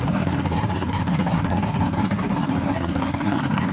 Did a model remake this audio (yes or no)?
yes